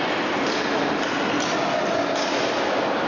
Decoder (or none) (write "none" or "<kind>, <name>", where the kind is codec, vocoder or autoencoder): none